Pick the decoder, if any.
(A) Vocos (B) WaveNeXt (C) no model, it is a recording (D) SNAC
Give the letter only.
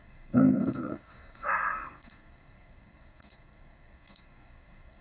D